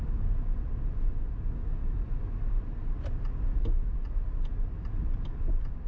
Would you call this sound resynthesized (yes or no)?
no